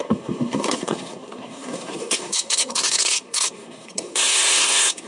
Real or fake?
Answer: fake